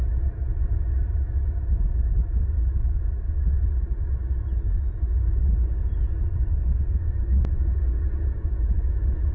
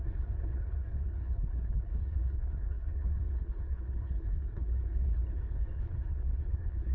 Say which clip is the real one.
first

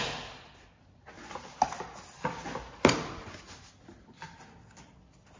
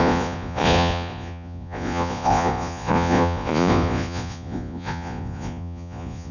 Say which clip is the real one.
first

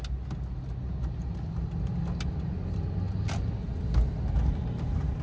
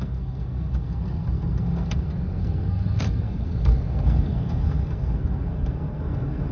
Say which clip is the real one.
first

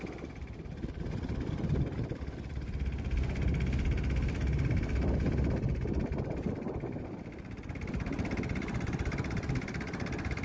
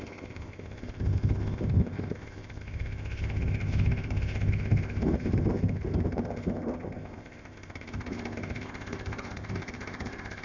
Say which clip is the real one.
first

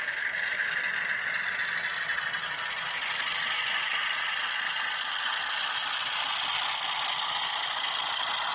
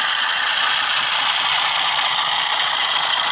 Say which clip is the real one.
first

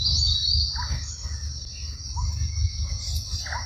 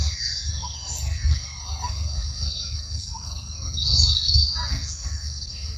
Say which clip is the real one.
first